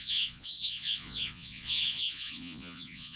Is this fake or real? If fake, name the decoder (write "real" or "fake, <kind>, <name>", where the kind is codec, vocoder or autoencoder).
fake, vocoder, Vocos